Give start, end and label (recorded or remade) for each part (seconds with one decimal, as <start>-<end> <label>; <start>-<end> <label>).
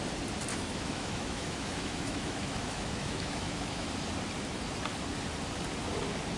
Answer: 0.0-0.5 recorded; 0.5-3.9 remade; 3.9-6.4 recorded